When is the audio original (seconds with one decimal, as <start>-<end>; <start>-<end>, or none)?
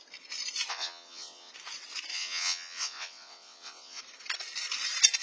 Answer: 0.0-0.7; 1.5-2.1; 4.0-5.2